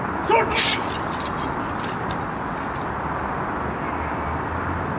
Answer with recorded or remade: recorded